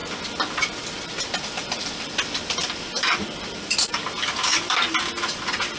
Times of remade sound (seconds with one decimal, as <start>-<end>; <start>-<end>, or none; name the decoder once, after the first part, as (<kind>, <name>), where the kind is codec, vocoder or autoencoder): 1.4-5.8 (vocoder, BigVGAN v2)